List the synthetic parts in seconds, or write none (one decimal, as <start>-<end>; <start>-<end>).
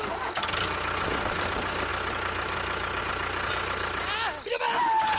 none